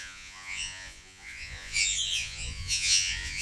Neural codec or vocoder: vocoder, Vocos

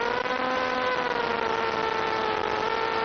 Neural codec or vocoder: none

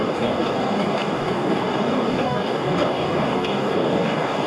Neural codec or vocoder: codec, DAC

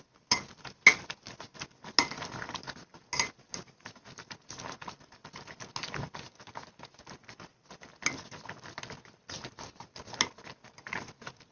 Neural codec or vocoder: none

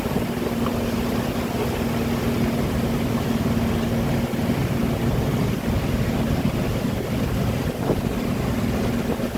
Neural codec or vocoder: none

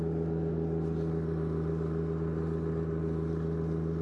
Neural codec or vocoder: none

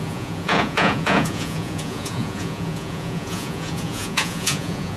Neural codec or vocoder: vocoder, Vocos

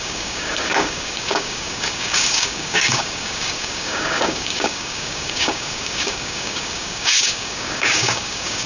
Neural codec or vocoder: codec, DAC